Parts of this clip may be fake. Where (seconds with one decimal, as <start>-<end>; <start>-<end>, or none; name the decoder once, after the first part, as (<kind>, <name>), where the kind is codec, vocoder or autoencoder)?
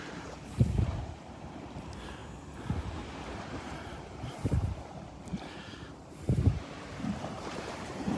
0.0-2.2 (vocoder, BigVGAN v2); 3.6-8.2